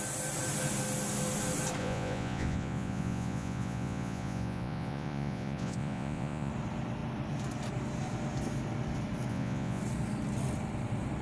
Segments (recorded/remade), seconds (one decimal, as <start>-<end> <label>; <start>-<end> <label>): 0.0-1.8 recorded; 1.8-6.5 remade; 6.5-9.3 recorded; 9.3-9.8 remade; 9.8-11.2 recorded